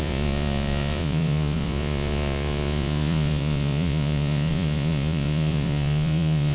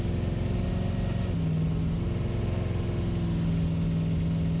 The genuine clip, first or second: second